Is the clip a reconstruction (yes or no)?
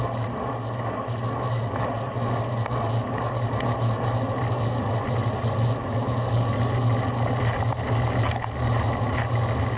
no